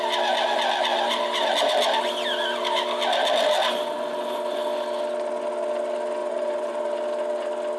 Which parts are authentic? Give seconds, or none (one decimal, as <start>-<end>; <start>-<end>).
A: 0.0-0.9; 1.5-6.2; 7.0-7.8